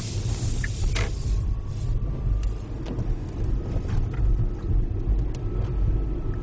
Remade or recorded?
recorded